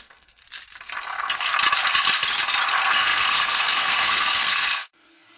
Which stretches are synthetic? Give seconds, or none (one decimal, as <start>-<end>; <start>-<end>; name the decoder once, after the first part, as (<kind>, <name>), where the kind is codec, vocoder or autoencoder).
0.0-0.4 (codec, SNAC); 1.0-1.5; 2.7-5.4

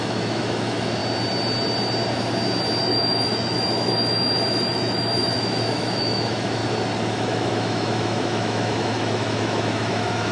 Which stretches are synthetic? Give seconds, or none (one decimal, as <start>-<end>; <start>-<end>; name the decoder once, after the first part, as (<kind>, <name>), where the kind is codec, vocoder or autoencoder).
0.0-1.0 (autoencoder, DAC-VAE); 2.8-6.6; 7.1-10.3